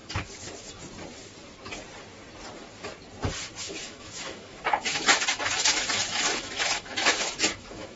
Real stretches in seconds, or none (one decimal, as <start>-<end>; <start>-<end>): 0.0-3.6

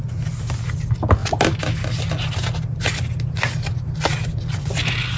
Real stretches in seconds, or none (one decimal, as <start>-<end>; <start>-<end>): 0.0-5.2

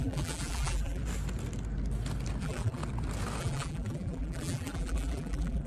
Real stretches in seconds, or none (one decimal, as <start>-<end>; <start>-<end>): 1.0-2.4; 2.8-3.4

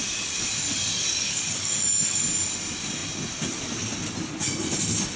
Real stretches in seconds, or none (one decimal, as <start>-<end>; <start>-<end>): 0.0-0.9; 2.2-5.2

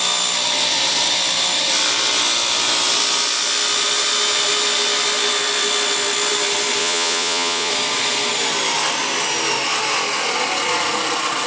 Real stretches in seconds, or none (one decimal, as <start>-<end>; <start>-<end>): 0.0-6.8; 7.7-11.5

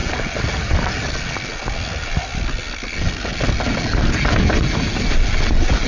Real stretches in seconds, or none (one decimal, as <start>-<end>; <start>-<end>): 0.0-5.9